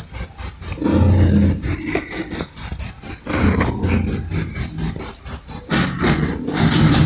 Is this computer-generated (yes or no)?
no